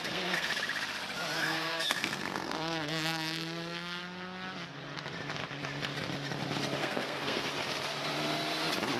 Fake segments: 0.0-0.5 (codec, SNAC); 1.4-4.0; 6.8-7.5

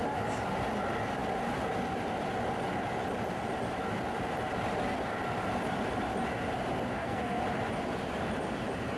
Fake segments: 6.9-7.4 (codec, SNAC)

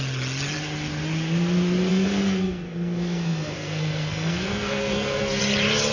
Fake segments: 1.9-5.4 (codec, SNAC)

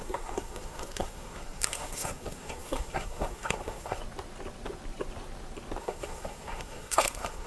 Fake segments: 0.0-4.0 (codec, SNAC); 5.8-7.5

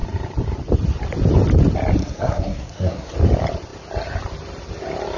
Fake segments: 2.0-3.1 (codec, SNAC)